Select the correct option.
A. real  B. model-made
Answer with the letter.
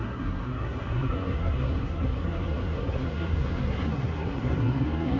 B